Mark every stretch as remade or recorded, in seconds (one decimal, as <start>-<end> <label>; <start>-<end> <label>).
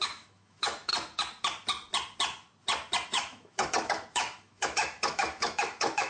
0.0-0.9 remade; 0.9-3.1 recorded; 3.1-6.1 remade